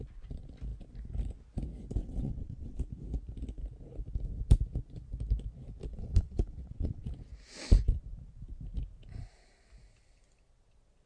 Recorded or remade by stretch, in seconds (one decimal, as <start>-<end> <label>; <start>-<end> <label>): 0.0-2.0 recorded; 2.0-2.8 remade; 2.8-5.9 recorded; 5.9-7.1 remade; 7.1-11.1 recorded